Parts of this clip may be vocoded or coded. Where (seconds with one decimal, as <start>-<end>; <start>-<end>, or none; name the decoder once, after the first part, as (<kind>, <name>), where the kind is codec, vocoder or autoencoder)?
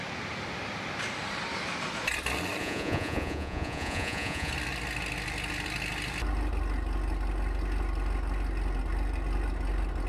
2.6-4.5 (vocoder, Vocos)